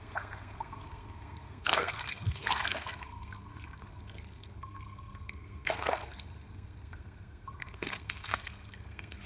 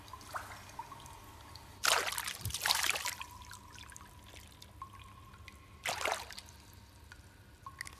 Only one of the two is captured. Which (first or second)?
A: second